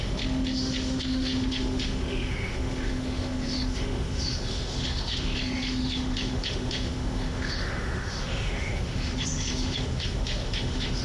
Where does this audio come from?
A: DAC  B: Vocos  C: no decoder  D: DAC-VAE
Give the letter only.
D